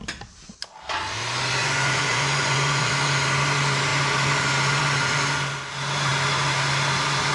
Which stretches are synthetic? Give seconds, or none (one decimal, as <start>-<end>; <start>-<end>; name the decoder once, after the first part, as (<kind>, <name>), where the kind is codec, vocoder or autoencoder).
1.6-2.9 (vocoder, Vocos)